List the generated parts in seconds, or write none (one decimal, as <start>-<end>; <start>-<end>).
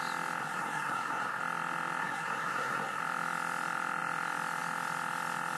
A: 0.4-1.4; 2.0-3.0